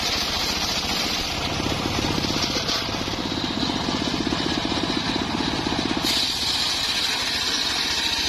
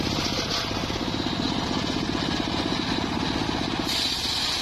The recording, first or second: second